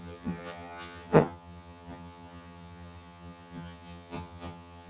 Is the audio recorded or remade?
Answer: remade